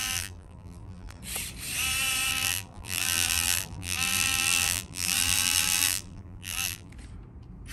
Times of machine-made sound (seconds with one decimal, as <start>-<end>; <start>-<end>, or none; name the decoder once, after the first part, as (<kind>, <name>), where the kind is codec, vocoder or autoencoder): 0.0-1.2 (vocoder, BigVGAN v2); 2.3-6.9